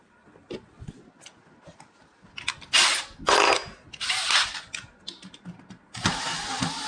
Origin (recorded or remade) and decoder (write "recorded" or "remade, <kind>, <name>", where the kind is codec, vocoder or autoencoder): recorded